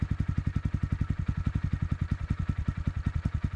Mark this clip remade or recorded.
recorded